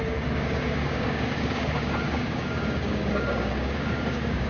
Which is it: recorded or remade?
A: remade